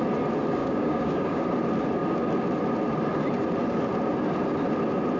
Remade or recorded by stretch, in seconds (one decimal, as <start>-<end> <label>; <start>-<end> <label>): 0.0-0.6 recorded; 0.6-1.4 remade; 1.4-5.2 recorded